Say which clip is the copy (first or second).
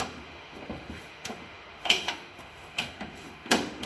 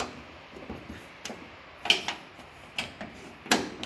first